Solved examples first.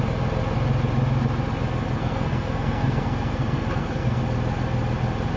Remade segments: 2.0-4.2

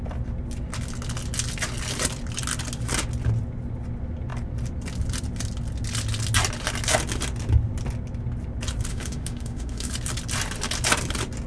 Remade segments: 8.9-9.9

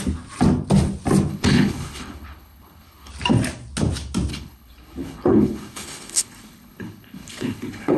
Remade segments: 1.3-3.1; 4.3-8.0